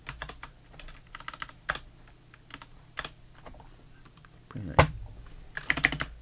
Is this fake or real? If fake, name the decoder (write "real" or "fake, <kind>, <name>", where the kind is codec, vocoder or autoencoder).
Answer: real